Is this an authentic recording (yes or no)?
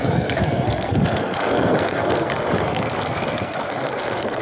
no